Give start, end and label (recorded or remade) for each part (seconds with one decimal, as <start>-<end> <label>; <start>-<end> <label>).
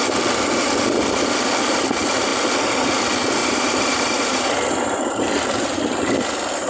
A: 0.0-3.4 recorded; 3.4-5.8 remade; 5.8-6.7 recorded